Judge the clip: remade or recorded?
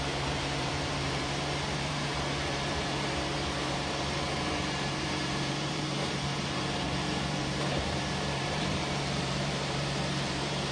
remade